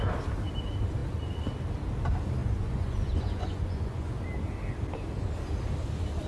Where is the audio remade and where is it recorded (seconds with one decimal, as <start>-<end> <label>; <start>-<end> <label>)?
0.0-2.4 recorded; 2.4-4.2 remade; 4.2-6.3 recorded